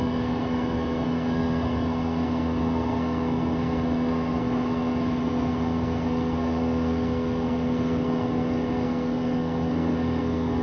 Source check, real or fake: fake